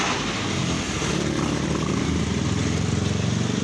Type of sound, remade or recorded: recorded